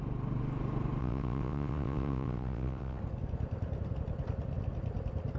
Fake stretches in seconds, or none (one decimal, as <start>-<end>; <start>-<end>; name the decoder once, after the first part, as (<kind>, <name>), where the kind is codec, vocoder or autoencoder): 1.0-3.0 (vocoder, WaveNeXt)